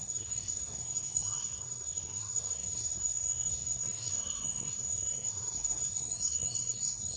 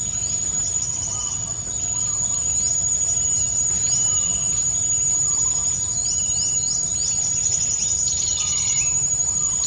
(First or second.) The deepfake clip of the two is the first